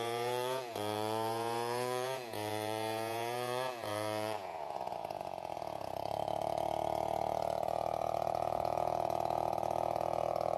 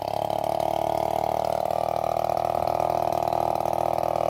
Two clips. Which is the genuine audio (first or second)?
second